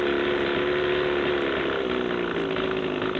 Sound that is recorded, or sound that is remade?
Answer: recorded